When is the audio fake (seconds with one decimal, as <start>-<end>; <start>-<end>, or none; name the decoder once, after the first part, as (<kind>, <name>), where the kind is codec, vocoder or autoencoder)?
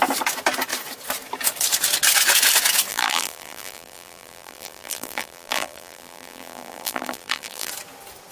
2.9-7.7 (vocoder, BigVGAN v2)